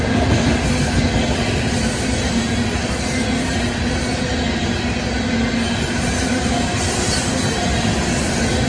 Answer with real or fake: real